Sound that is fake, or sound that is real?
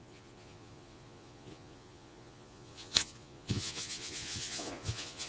fake